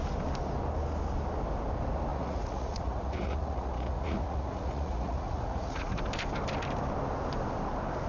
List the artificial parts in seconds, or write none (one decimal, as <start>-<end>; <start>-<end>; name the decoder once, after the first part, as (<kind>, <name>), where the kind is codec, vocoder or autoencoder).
2.1-6.0 (vocoder, Vocos)